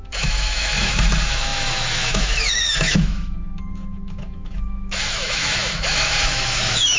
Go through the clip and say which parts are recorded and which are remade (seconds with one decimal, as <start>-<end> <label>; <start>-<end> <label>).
0.0-7.0 remade